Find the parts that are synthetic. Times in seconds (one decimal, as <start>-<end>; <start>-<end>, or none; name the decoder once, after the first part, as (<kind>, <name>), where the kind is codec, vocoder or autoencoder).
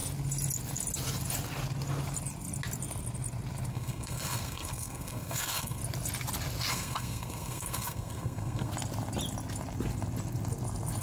3.7-5.8 (codec, SNAC); 6.7-8.7